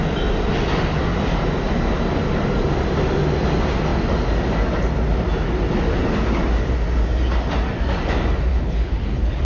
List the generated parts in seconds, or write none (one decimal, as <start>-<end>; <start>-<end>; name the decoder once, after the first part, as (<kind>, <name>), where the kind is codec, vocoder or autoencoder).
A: 8.5-9.4 (codec, HILCodec)